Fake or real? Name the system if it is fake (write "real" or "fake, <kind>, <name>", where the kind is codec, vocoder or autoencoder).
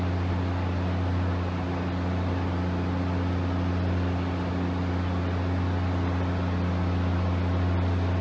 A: real